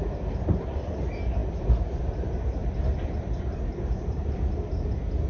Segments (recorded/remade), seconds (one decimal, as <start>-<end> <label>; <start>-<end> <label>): 0.0-2.6 recorded; 2.6-3.4 remade; 3.4-5.3 recorded